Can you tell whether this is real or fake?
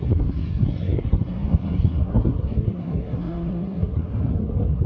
fake